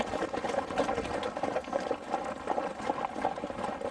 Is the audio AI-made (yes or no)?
no